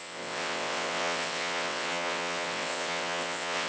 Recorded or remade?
remade